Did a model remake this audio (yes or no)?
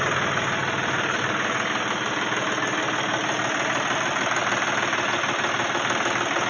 no